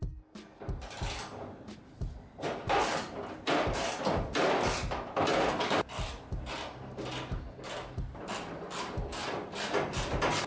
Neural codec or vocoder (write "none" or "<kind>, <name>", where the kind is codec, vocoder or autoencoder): none